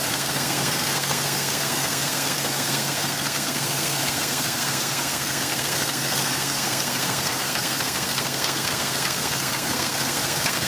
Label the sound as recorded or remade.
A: remade